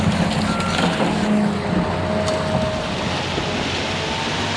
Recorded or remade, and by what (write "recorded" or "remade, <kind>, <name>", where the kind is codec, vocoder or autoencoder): recorded